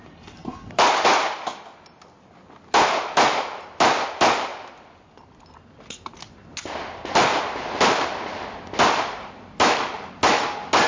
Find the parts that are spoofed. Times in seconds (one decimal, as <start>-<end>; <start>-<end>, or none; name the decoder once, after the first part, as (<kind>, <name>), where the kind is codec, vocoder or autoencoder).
none